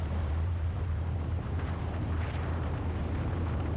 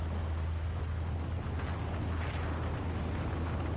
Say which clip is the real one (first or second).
second